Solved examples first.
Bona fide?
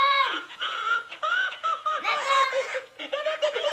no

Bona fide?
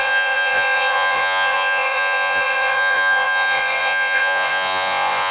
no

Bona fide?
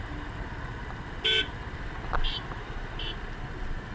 yes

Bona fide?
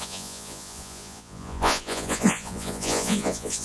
no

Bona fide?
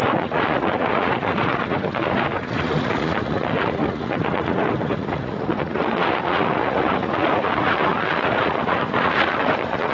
no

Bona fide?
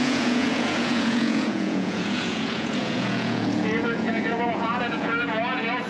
no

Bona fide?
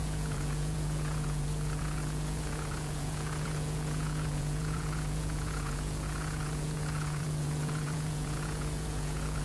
no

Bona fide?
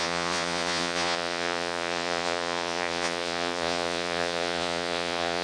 no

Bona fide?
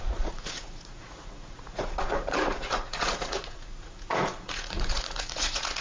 no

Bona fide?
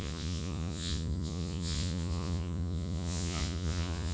no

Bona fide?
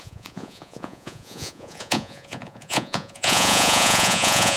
no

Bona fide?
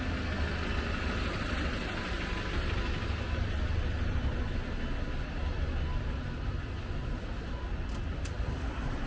yes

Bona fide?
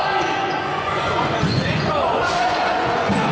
no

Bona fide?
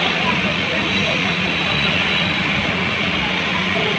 no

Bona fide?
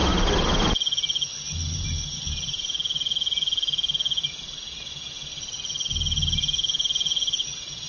yes